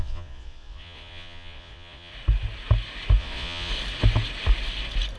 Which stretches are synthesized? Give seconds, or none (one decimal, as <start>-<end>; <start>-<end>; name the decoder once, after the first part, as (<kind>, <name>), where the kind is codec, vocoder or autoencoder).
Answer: 0.0-2.1 (vocoder, Vocos); 3.2-3.7